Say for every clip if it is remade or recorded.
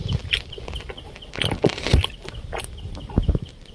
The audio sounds recorded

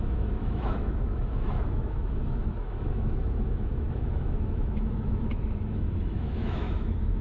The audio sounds remade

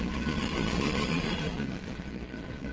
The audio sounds remade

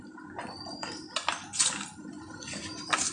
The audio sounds recorded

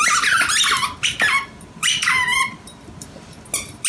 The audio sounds recorded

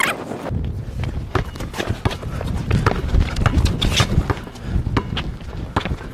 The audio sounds recorded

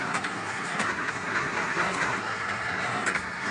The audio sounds remade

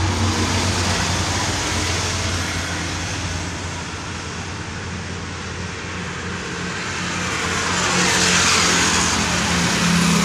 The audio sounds recorded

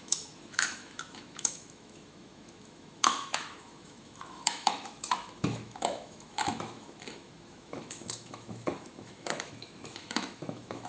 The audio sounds remade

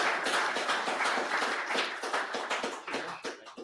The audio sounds recorded